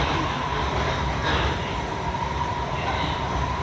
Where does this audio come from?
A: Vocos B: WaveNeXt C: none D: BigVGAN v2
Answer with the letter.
C